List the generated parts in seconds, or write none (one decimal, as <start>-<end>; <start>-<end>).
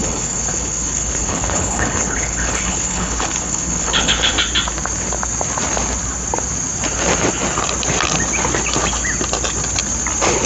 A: 0.0-4.3